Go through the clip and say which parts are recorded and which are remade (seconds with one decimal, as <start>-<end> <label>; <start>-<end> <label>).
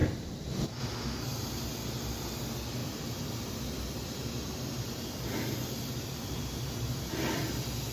0.0-0.6 remade; 0.6-2.8 recorded; 2.8-7.0 remade; 7.0-7.9 recorded